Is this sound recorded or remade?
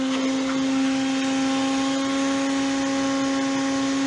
recorded